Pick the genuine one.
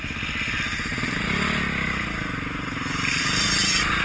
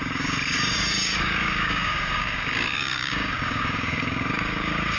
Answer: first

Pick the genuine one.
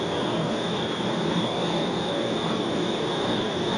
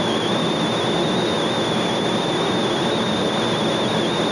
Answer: second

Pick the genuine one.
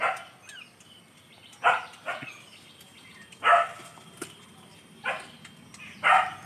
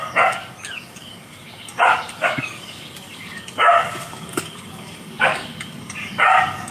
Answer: first